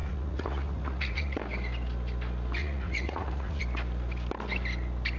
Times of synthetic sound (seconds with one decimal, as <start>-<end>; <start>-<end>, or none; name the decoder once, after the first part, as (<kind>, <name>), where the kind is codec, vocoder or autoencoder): 0.0-1.4 (vocoder, Vocos); 2.6-3.6